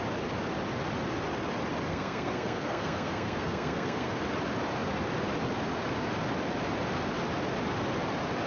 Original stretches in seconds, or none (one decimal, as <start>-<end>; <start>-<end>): 0.0-1.9; 4.2-8.5